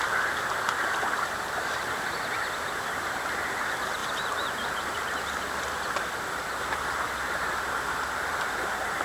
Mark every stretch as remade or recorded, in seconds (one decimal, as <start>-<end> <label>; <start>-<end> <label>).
0.0-9.0 recorded